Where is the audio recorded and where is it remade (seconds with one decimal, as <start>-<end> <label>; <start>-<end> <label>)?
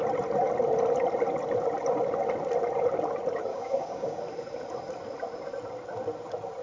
0.0-3.5 recorded; 3.5-4.2 remade; 4.2-6.6 recorded